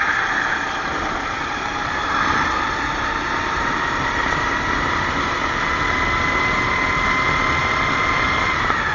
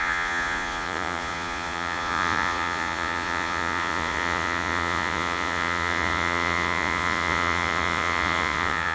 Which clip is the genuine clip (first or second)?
first